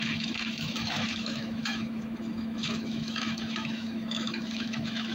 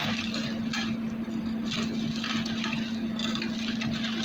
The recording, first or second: second